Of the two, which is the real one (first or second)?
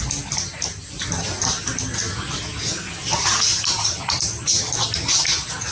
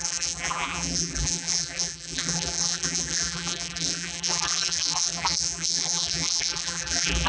first